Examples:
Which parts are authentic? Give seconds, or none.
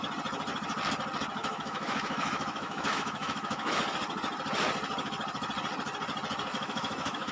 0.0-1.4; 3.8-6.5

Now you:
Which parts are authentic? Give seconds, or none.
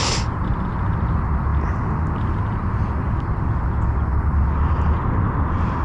0.0-5.8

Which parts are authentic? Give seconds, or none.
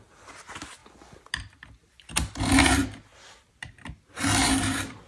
0.0-5.1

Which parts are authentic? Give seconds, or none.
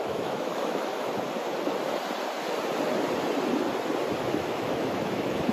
1.1-4.2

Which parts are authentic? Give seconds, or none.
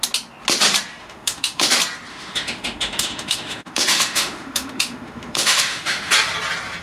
0.0-1.0; 1.7-2.1; 6.1-6.8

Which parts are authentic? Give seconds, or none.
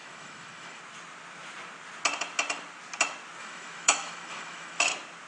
0.8-3.4; 4.8-5.3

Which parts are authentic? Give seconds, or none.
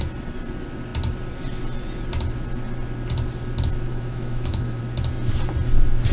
0.0-3.9; 4.8-6.1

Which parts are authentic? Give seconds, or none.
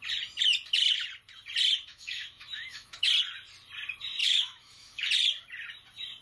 0.0-1.9; 3.1-4.2; 5.1-6.2